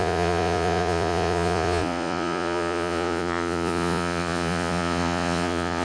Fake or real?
fake